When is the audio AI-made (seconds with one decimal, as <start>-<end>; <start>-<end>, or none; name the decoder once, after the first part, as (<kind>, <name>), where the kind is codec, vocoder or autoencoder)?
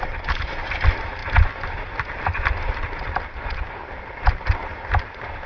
none